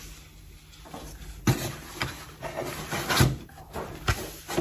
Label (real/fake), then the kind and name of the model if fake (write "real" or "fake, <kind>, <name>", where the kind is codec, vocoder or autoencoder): real